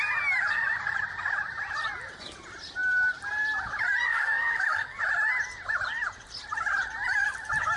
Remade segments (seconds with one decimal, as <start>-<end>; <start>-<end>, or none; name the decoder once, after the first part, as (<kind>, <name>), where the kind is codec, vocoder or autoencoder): 4.1-5.0 (codec, DAC)